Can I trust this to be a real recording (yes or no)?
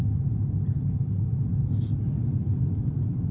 yes